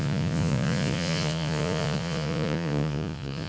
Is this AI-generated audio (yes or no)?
yes